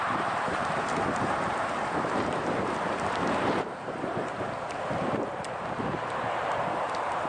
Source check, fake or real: fake